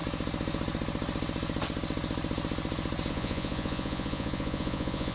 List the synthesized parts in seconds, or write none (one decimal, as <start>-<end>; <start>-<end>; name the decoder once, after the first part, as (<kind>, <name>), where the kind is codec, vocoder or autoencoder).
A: 3.1-5.1 (vocoder, Vocos)